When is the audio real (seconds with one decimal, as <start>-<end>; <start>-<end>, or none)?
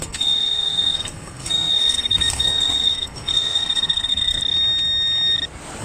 4.4-5.8